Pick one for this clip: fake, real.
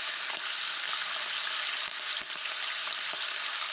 real